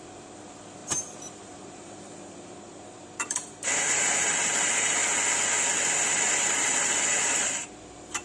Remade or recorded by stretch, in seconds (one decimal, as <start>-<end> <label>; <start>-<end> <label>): 0.0-5.0 remade; 5.0-6.3 recorded; 6.3-8.2 remade